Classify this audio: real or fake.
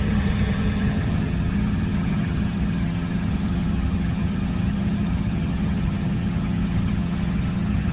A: fake